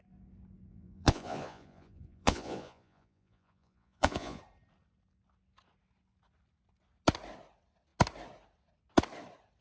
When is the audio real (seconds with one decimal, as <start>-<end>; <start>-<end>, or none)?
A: 0.0-0.7; 4.4-9.6